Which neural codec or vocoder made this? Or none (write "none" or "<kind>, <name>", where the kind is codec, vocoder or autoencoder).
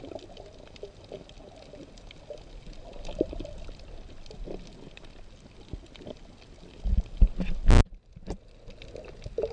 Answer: none